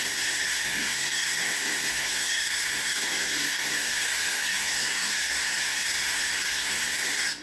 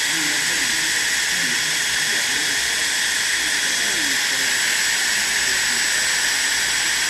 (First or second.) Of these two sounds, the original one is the second